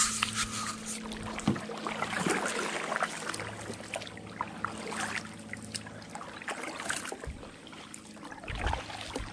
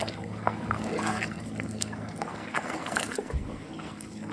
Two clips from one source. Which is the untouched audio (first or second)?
first